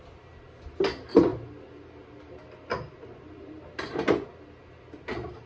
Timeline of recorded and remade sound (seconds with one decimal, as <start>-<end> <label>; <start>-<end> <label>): 0.0-5.5 recorded